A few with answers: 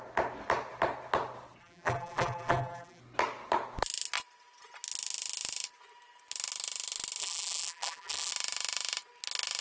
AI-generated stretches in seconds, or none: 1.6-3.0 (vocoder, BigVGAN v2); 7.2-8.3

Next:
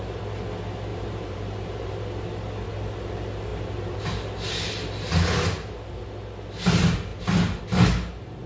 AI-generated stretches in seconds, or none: 0.9-1.9 (vocoder, BigVGAN v2); 3.5-4.0

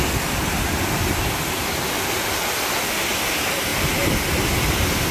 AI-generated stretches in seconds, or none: none

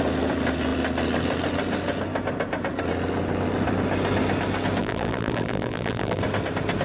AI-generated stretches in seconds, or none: 4.8-6.2 (vocoder, BigVGAN v2)

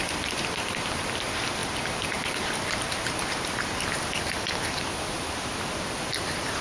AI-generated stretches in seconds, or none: 0.0-1.6 (vocoder, BigVGAN v2); 3.2-6.6